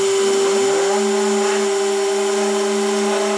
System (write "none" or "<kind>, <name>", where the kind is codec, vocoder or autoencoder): none